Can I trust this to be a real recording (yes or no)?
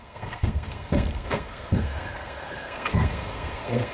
no